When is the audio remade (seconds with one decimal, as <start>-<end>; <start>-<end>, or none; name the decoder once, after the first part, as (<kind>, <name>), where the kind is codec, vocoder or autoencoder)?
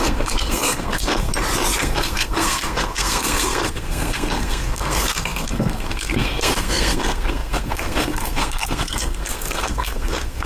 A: 0.0-1.3 (codec, SNAC); 1.8-10.5